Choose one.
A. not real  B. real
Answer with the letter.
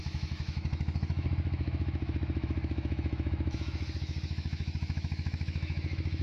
A